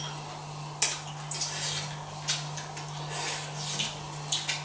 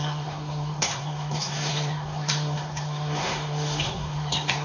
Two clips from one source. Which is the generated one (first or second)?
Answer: second